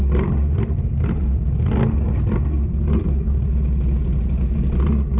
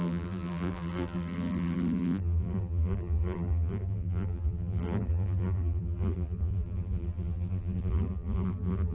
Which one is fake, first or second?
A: second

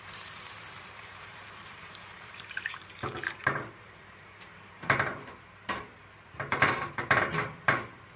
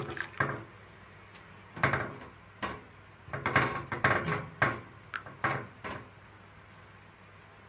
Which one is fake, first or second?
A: first